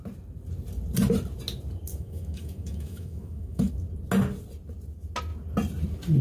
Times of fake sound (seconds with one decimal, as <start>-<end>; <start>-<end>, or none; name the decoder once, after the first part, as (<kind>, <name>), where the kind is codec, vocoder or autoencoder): 1.9-3.7 (autoencoder, DAC-VAE)

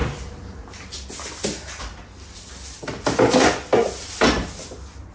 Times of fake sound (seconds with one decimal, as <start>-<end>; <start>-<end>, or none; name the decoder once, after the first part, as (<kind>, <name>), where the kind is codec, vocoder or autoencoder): none